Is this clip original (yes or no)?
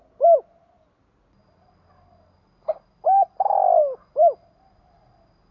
yes